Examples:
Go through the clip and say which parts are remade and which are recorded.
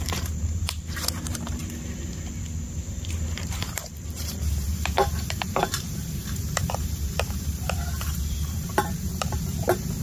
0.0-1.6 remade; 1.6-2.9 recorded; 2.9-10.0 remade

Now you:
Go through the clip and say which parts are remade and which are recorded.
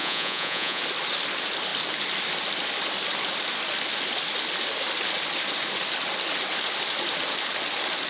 0.0-0.8 remade; 0.8-8.1 recorded